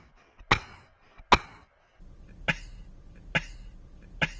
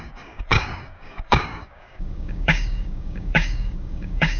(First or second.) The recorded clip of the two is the first